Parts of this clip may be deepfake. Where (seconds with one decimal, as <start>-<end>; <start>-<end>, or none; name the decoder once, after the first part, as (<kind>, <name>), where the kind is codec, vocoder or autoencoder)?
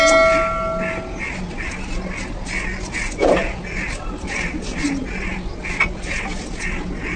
none